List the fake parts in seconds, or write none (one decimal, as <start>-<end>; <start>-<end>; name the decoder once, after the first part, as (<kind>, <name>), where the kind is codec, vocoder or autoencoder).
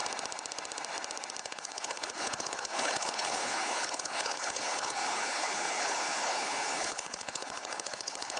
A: 1.4-8.4 (codec, HILCodec)